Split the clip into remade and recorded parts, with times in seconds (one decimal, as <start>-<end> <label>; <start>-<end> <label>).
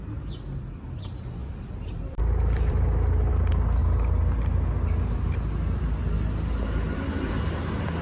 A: 0.0-1.4 recorded; 1.4-3.3 remade; 3.3-8.0 recorded